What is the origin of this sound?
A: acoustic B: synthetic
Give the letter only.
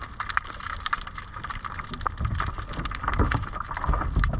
A